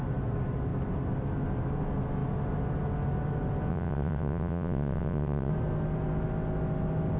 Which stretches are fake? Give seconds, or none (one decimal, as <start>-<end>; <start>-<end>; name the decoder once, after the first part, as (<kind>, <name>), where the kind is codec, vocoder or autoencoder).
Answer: 3.7-5.5 (vocoder, WaveNeXt)